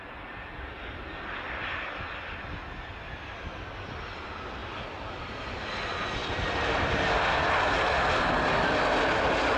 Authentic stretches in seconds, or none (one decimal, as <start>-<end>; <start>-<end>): 0.0-4.6; 5.6-6.2; 7.2-9.6